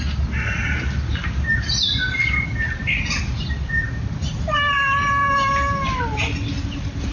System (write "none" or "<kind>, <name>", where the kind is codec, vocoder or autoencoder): none